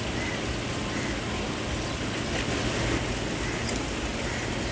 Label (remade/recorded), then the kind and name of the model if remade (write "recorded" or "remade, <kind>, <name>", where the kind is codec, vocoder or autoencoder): recorded